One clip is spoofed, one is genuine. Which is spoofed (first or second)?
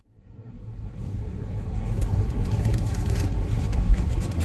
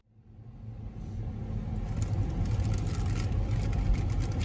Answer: first